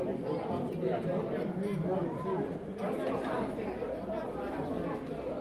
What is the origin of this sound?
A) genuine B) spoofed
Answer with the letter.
A